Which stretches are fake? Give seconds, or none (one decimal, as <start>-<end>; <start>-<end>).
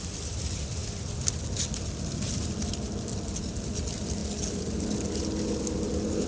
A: none